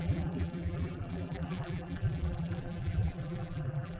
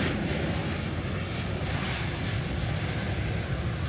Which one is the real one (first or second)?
second